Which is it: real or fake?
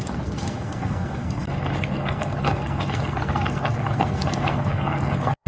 fake